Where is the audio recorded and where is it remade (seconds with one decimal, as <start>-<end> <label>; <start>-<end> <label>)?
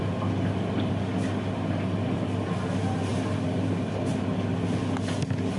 0.0-3.1 recorded; 3.1-3.7 remade; 3.7-5.6 recorded